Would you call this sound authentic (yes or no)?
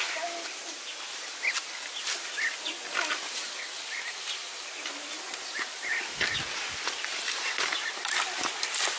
yes